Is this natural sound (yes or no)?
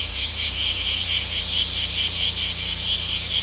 no